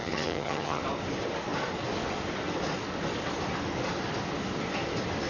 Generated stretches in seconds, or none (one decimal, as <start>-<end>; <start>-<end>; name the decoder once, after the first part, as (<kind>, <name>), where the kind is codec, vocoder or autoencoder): 0.0-0.8 (vocoder, HiFi-GAN)